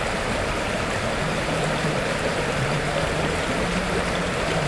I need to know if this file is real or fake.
fake